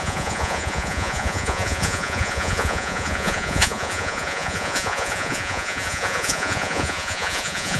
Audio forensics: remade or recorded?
remade